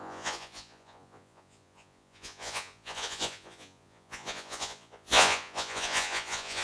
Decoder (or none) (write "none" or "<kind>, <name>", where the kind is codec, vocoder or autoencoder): vocoder, Vocos